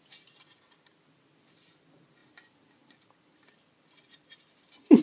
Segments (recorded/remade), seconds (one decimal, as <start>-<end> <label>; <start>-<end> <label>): 0.0-2.2 recorded; 2.2-5.0 remade